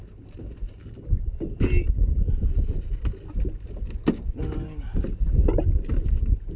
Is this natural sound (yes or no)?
yes